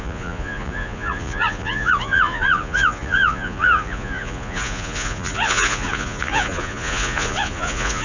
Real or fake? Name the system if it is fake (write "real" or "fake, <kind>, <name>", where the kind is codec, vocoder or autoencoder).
fake, vocoder, Vocos